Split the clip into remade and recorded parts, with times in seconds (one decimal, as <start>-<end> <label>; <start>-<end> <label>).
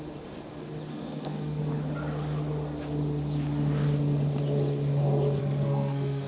0.0-0.9 recorded; 0.9-1.6 remade; 1.6-5.4 recorded; 5.4-6.3 remade